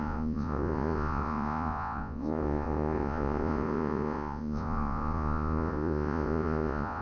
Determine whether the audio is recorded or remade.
remade